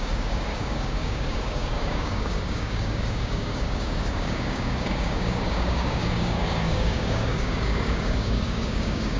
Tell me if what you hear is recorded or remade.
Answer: remade